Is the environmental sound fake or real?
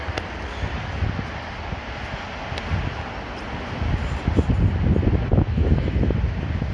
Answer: real